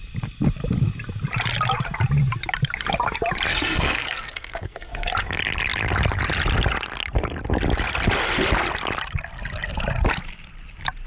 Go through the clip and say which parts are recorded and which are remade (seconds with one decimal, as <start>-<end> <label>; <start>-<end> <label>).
0.0-3.5 recorded; 3.5-5.1 remade; 5.1-11.1 recorded